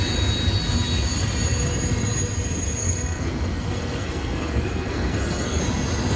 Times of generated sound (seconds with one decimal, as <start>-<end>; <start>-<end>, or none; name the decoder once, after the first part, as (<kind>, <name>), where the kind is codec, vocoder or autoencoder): 2.8-5.6 (codec, SNAC)